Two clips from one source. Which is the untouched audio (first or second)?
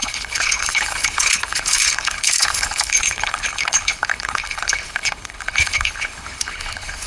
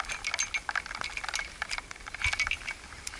second